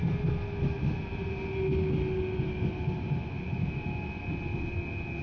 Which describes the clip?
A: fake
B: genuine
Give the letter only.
B